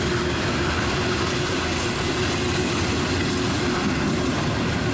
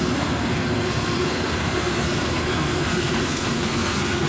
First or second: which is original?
first